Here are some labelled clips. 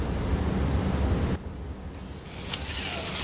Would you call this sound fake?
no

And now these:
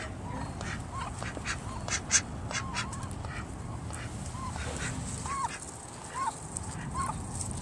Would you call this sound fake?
no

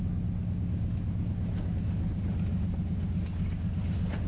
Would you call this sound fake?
no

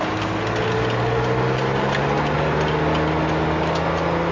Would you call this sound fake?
no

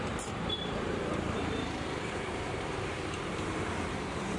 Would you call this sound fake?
yes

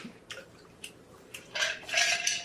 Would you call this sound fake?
yes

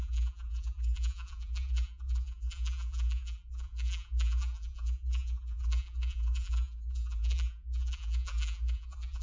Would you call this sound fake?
yes